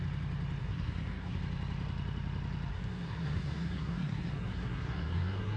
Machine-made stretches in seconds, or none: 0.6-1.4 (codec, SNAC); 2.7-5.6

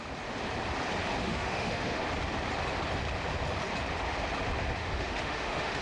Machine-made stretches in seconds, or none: 1.2-2.0 (autoencoder, DAC-VAE); 4.8-5.8

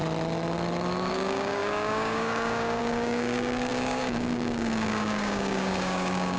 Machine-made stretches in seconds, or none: 1.1-6.4 (codec, DAC)